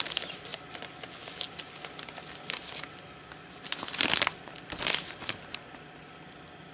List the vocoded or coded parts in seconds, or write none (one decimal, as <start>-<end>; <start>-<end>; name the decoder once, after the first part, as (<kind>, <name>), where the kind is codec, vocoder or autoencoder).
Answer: none